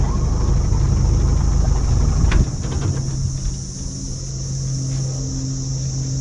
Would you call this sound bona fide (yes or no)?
yes